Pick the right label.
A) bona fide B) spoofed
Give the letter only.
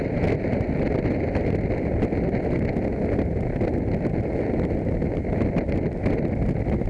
A